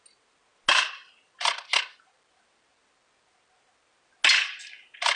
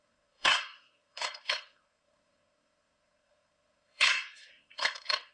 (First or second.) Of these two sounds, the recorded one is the first